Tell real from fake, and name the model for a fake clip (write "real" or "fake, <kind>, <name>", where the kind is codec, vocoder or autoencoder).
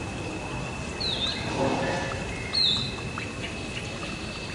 real